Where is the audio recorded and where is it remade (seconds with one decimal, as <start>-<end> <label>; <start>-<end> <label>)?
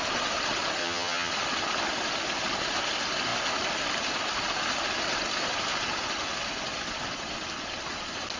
0.0-0.8 recorded; 0.8-1.3 remade; 1.3-8.4 recorded